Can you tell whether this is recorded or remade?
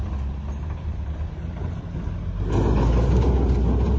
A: recorded